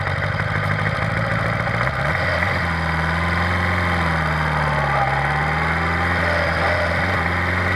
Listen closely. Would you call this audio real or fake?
real